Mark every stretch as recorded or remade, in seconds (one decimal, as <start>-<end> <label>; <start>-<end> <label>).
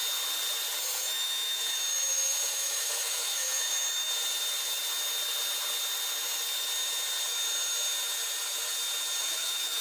0.0-0.8 recorded; 0.8-4.1 remade; 4.1-9.2 recorded; 9.2-9.8 remade